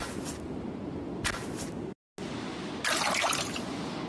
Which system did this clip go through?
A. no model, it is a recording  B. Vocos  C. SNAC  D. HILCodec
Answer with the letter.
A